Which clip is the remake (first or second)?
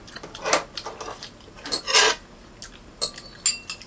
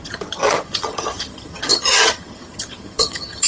second